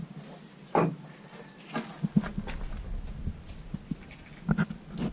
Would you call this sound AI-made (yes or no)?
no